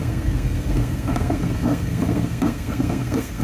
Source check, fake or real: fake